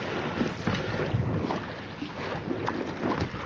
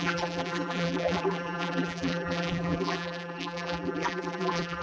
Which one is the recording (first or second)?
first